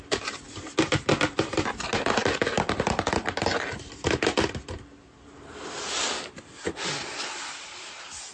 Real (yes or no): yes